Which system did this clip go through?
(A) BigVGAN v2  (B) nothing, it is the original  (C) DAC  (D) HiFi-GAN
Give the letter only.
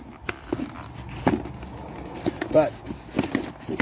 B